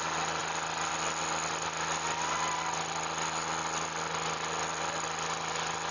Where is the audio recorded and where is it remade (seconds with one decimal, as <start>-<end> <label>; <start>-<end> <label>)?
0.0-5.9 recorded

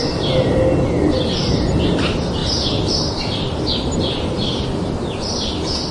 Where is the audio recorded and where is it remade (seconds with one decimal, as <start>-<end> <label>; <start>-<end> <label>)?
0.0-5.9 recorded

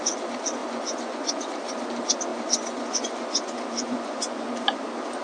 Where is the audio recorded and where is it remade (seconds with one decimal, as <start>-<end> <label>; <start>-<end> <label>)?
0.0-0.6 recorded; 0.6-1.5 remade; 1.5-2.3 recorded; 2.3-4.5 remade; 4.5-5.2 recorded

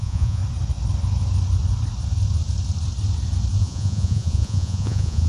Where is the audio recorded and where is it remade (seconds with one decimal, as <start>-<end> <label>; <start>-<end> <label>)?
0.0-0.4 remade; 0.4-3.6 recorded; 3.6-5.3 remade